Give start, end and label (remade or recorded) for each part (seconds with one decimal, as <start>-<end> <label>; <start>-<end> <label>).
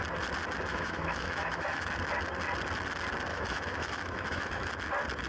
0.0-0.7 recorded; 0.7-1.9 remade; 1.9-3.3 recorded; 3.3-4.7 remade; 4.7-5.3 recorded